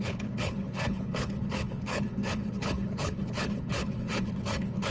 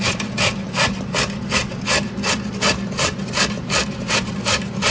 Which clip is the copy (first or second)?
first